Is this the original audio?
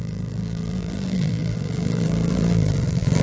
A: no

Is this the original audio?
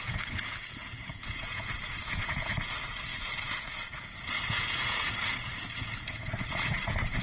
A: no